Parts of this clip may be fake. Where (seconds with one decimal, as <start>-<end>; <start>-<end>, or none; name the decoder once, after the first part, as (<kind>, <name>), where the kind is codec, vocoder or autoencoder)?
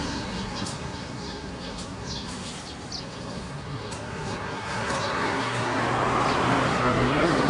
0.0-2.5 (codec, SNAC); 3.0-5.8; 6.7-7.5